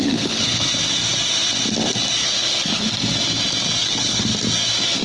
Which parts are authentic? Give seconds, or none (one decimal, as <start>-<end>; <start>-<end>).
0.6-2.2; 2.9-3.8; 4.3-5.0